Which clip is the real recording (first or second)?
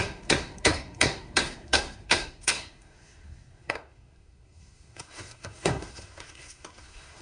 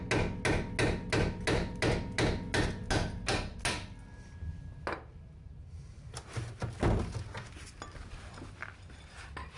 second